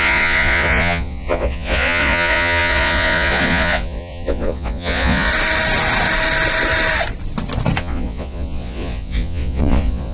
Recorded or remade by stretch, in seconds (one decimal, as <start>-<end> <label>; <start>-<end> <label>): 0.0-5.3 remade; 5.3-7.8 recorded; 7.8-10.1 remade